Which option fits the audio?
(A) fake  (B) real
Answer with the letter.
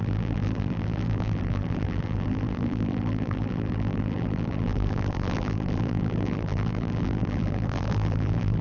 A